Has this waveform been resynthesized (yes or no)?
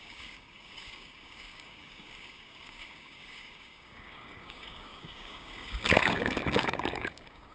yes